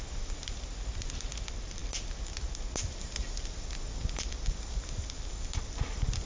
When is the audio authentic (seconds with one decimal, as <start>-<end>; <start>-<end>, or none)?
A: 0.0-6.3